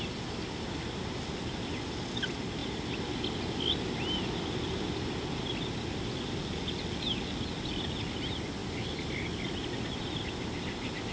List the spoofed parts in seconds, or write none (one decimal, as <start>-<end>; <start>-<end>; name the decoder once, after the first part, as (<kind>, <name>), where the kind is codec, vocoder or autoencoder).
none

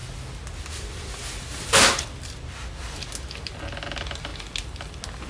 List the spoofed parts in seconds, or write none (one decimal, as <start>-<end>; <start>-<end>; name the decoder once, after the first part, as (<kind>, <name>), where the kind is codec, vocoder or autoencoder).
none

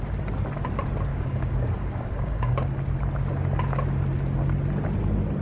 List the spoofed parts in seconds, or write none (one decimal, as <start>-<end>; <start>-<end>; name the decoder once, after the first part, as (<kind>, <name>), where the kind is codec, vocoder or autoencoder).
1.1-2.8 (codec, DAC)

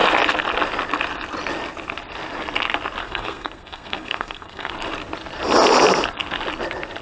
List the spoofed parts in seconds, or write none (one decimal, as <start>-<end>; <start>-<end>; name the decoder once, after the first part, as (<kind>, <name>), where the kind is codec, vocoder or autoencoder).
3.0-4.7 (codec, SNAC)

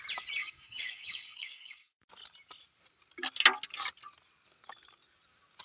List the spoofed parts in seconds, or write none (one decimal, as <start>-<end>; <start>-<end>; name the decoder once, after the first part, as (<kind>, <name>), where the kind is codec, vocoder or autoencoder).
0.4-2.0 (codec, DAC)

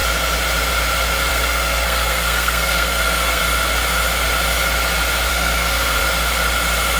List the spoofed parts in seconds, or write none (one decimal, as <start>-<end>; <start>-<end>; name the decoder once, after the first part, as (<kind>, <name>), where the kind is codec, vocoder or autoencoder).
1.3-3.4 (codec, SNAC); 5.3-6.0

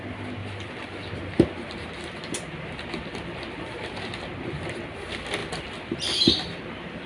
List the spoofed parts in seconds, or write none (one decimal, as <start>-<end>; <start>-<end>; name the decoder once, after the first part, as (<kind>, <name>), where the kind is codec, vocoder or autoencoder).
0.4-4.3 (vocoder, BigVGAN v2); 5.4-7.1